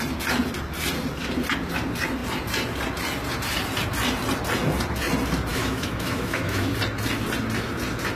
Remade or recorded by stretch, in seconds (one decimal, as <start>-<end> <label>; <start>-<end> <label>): 0.0-5.5 recorded; 5.5-6.7 remade; 6.7-8.2 recorded